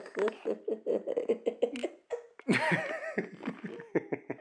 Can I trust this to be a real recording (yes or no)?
yes